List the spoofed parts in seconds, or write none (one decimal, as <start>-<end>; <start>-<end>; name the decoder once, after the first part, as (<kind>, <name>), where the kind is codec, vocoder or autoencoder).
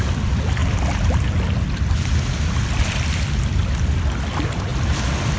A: 0.0-0.6 (vocoder, BigVGAN v2); 2.8-3.6; 4.2-4.7